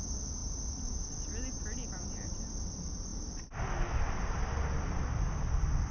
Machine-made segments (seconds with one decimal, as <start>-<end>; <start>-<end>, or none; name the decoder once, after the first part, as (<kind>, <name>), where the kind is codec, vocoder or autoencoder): none